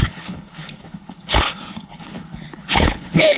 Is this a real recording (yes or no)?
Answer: no